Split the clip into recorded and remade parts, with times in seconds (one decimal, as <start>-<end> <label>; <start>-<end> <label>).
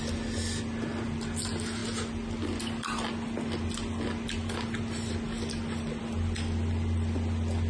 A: 0.0-7.7 recorded